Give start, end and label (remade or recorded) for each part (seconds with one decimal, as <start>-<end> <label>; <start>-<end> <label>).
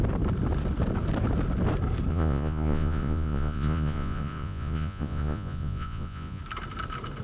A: 0.0-2.1 recorded; 2.1-6.4 remade; 6.4-7.2 recorded